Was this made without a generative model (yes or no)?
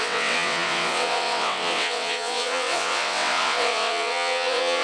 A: no